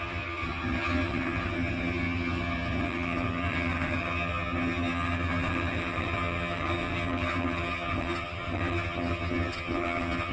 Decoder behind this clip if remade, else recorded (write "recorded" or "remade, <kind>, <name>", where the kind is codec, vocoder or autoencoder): remade, vocoder, HiFi-GAN